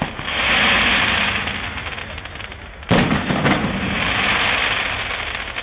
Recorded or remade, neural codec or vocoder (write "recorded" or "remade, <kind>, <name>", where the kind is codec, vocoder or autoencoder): recorded